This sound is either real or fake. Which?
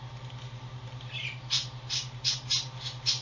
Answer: fake